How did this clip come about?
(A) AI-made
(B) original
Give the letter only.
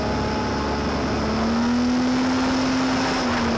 B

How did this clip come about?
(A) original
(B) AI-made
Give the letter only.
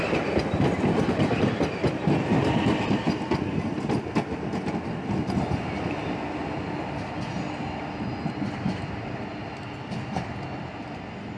A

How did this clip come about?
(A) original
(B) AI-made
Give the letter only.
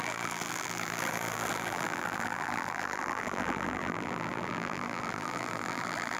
B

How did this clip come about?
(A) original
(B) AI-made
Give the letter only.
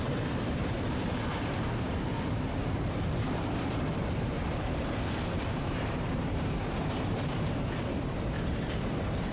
B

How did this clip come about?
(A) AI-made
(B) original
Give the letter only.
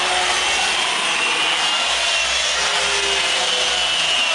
B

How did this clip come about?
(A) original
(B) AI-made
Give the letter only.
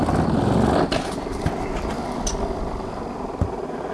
A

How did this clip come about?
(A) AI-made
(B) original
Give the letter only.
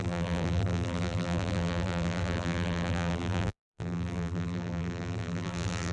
A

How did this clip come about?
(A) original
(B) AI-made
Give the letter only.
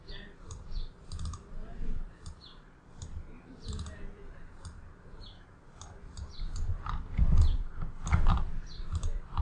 B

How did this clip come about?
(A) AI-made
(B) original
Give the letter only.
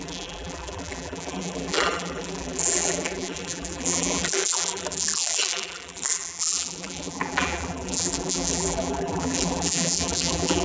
A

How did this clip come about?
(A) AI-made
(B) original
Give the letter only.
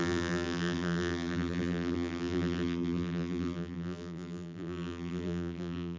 A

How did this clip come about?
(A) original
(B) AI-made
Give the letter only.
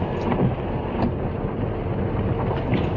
A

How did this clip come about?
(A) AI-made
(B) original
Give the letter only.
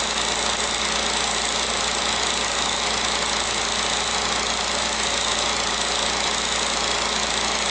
B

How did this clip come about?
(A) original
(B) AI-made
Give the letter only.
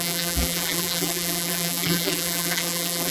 B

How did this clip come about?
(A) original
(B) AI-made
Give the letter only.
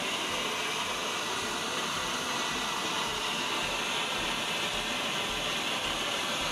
A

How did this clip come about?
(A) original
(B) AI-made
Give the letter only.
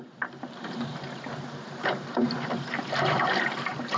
B